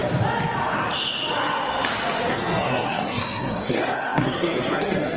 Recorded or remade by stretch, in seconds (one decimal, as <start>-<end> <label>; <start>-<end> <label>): 0.0-2.3 recorded; 2.3-5.2 remade